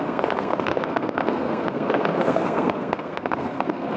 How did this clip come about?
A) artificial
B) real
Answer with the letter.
A